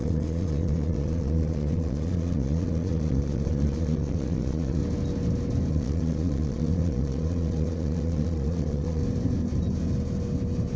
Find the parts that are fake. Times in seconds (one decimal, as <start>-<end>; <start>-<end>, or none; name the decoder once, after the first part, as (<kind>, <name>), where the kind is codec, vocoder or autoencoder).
0.0-4.8 (vocoder, Vocos); 5.7-9.0